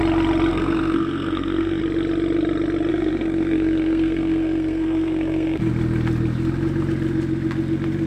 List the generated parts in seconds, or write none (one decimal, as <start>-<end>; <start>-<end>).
0.5-1.8; 2.9-5.7